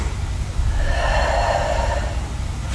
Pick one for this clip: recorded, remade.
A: recorded